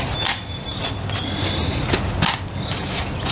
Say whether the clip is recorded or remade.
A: recorded